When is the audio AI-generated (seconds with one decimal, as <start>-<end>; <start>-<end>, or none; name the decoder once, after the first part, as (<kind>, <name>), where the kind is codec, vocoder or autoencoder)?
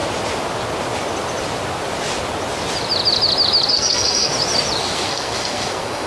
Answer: 3.7-4.3 (codec, SNAC); 4.8-6.1